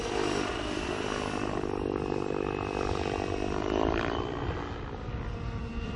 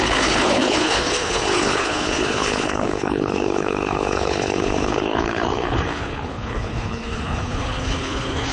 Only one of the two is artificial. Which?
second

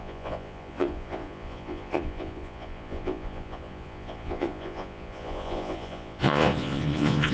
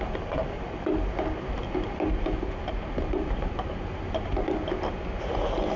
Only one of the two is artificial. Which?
first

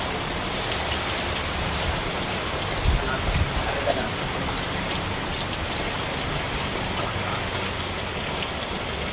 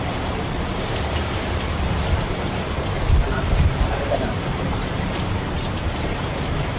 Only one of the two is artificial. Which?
second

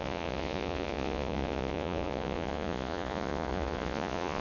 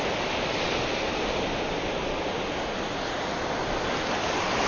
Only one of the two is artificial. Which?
first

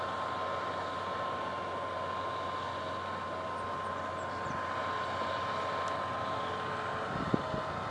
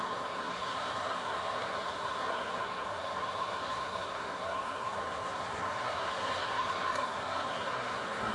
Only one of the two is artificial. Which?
second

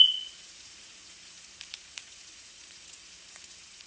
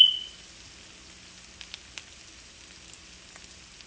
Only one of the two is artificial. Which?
first